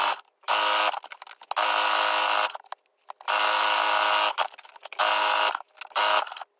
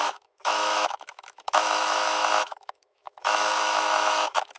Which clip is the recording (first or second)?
first